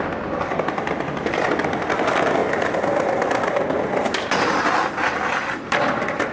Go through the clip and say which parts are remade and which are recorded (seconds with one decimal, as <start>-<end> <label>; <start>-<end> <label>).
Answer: 0.0-6.3 recorded